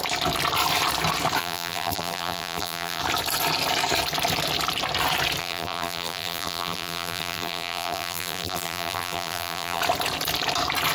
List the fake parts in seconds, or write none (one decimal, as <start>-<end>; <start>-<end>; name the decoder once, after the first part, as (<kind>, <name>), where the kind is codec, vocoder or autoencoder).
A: 1.4-3.0 (vocoder, BigVGAN v2); 5.4-9.8